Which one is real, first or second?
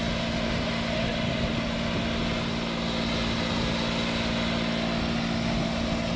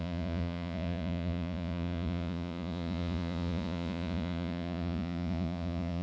first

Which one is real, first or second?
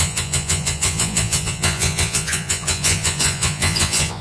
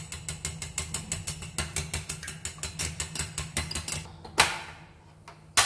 second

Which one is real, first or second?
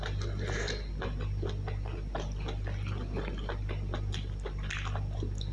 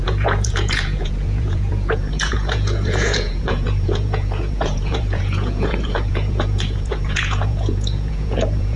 first